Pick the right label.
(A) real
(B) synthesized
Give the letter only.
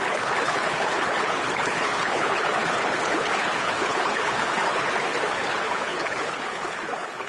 B